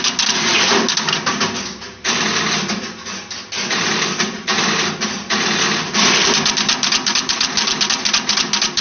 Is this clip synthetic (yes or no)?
no